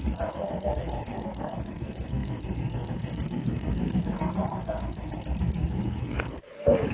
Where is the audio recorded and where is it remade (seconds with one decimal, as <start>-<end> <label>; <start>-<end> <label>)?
0.0-6.9 remade